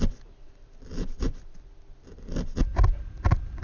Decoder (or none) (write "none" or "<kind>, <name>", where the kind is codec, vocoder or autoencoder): none